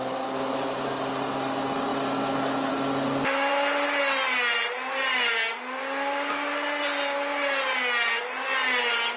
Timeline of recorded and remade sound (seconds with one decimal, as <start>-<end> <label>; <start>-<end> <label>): 0.0-9.2 recorded